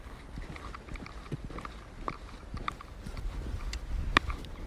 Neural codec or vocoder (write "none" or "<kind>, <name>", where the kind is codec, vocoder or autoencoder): none